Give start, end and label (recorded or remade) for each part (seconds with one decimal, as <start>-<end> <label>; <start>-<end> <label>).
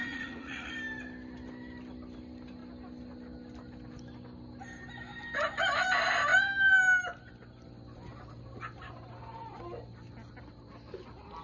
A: 0.0-0.7 remade; 0.7-11.4 recorded